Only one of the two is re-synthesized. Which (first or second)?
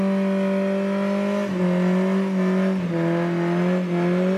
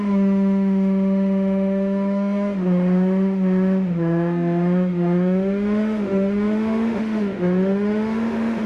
second